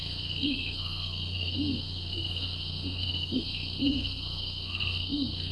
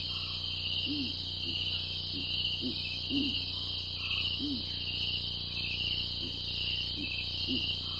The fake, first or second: first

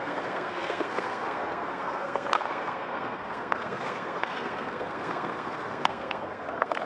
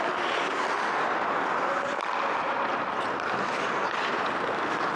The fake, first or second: first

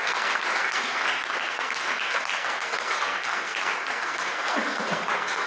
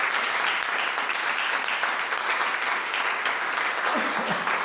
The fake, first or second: first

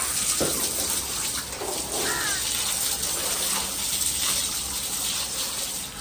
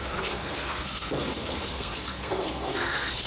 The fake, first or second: second